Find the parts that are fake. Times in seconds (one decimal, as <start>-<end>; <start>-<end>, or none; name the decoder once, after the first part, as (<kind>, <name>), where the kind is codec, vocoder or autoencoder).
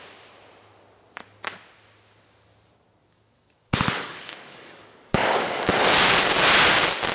3.0-5.7 (codec, DAC)